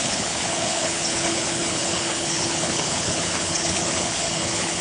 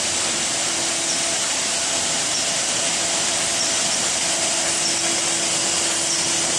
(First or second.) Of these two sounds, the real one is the second